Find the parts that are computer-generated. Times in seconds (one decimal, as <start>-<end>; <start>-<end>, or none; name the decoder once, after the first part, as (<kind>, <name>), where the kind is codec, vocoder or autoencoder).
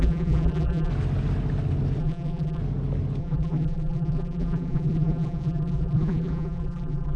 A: 0.0-0.9 (vocoder, BigVGAN v2); 2.0-2.6; 3.2-7.2